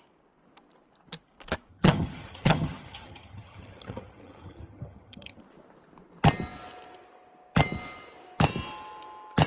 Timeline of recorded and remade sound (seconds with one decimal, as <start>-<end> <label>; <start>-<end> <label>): 0.0-1.7 recorded; 1.7-5.4 remade; 5.4-9.5 recorded